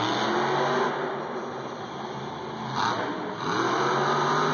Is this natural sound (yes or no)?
yes